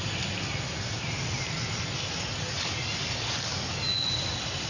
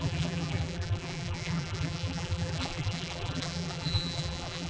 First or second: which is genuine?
first